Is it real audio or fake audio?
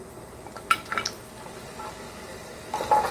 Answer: real